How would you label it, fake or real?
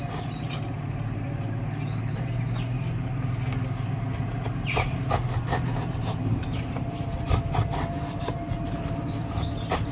fake